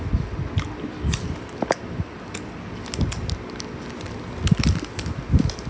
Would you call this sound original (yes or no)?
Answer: yes